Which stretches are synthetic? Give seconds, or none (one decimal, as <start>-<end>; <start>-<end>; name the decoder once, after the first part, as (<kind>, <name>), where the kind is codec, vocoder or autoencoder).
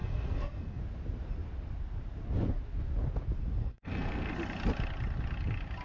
0.0-0.8 (codec, SNAC); 3.6-4.3